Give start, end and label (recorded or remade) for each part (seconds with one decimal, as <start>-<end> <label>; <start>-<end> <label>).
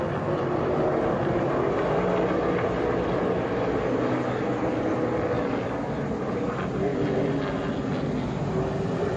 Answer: 0.0-9.2 recorded